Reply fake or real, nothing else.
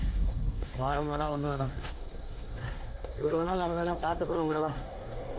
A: fake